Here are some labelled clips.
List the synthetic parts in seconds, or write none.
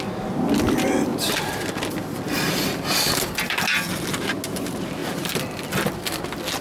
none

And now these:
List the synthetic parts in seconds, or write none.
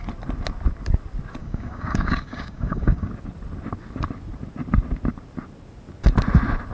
1.4-3.1 (codec, DAC)